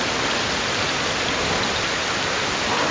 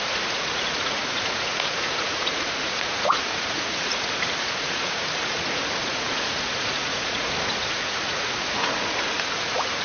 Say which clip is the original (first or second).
first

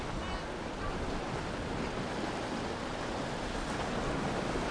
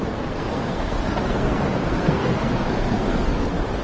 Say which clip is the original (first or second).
first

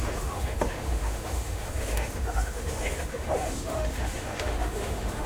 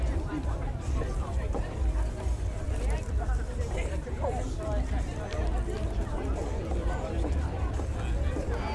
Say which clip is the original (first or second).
second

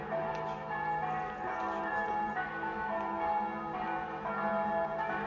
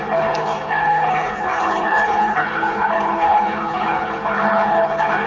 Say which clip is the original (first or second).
first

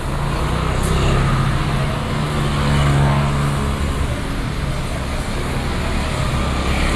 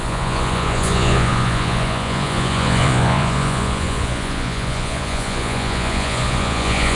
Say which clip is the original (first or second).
first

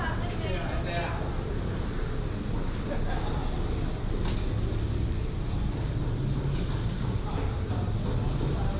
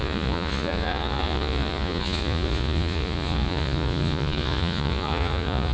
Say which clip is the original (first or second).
first